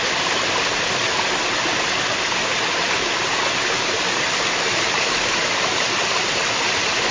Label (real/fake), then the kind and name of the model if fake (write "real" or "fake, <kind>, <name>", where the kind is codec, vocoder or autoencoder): real